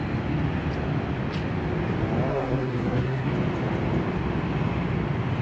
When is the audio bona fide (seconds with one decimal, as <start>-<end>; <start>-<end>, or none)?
0.0-2.3; 3.3-5.4